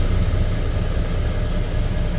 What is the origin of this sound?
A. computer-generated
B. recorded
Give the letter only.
B